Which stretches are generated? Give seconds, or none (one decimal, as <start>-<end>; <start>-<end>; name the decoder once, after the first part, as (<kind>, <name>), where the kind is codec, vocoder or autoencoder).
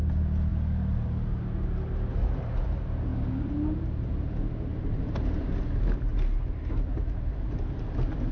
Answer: none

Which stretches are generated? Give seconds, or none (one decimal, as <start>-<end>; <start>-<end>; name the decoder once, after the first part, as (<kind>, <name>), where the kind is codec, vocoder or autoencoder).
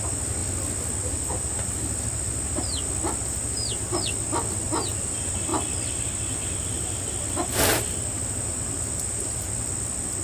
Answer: none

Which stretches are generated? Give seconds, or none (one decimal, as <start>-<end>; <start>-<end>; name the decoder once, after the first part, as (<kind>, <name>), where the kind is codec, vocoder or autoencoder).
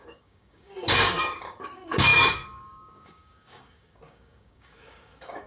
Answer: 0.0-5.5 (codec, DAC)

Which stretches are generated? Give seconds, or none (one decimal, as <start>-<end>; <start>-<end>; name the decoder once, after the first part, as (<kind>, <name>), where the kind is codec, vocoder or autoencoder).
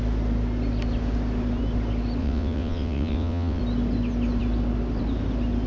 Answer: 2.2-3.6 (vocoder, WaveNeXt)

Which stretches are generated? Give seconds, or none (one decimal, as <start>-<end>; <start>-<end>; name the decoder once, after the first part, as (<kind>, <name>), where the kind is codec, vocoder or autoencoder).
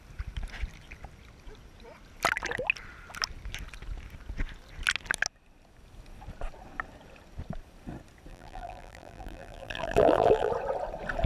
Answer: 8.3-10.5 (vocoder, BigVGAN v2)